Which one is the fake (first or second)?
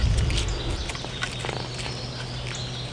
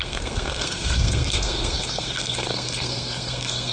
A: second